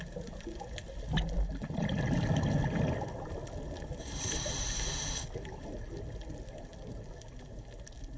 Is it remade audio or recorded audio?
recorded